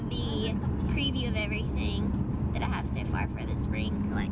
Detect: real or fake real